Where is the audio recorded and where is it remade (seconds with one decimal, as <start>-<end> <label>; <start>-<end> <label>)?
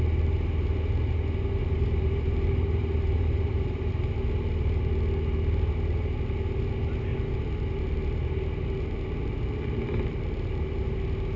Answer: 0.0-1.6 recorded; 1.6-3.9 remade; 3.9-11.4 recorded